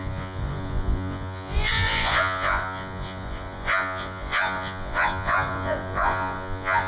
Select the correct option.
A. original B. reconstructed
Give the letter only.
B